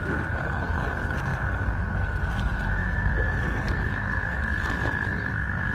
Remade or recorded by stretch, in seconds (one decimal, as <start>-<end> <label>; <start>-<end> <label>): 0.0-5.7 remade

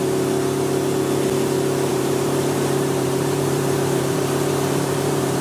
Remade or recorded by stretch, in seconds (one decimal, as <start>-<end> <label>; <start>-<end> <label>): 0.0-1.9 recorded; 1.9-5.4 remade